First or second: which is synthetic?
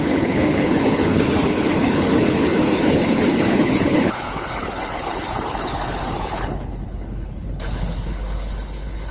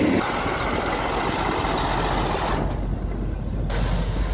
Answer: first